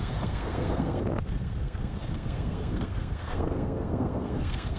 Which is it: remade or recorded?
remade